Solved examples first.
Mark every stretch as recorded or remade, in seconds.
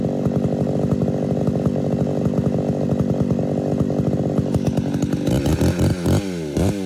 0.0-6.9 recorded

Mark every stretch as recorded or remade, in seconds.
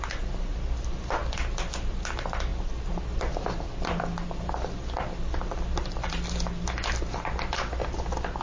0.0-8.4 recorded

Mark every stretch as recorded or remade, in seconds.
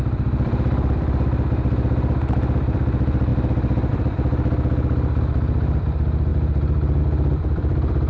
0.0-3.3 remade; 3.3-3.9 recorded; 3.9-4.3 remade; 4.3-5.2 recorded; 5.2-8.1 remade